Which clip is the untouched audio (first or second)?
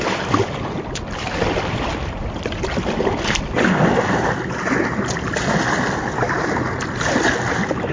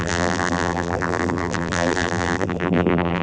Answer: first